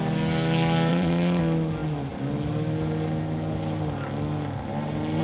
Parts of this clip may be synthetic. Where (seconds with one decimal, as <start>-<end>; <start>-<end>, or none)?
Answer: 0.9-1.4